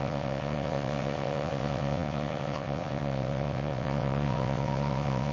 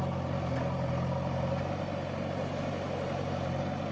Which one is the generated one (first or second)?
first